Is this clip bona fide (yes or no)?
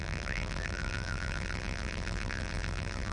no